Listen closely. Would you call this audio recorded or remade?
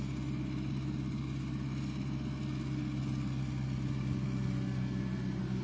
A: recorded